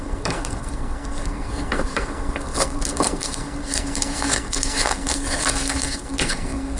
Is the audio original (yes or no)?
no